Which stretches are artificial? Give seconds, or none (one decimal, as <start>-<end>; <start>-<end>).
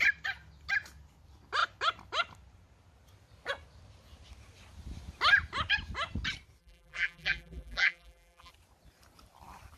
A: 6.6-8.5